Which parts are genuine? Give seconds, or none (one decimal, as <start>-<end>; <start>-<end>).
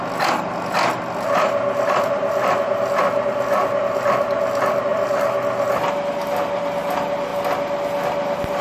0.0-4.9; 5.7-7.3